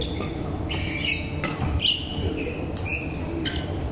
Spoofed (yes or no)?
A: no